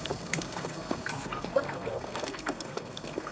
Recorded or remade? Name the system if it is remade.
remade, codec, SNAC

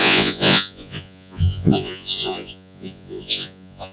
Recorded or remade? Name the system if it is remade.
remade, vocoder, Vocos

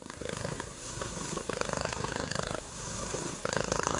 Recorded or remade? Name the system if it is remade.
remade, codec, SNAC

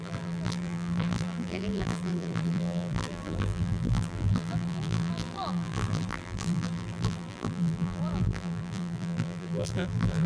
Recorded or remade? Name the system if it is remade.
remade, vocoder, BigVGAN v2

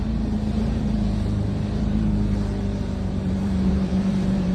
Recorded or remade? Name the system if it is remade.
remade, vocoder, BigVGAN v2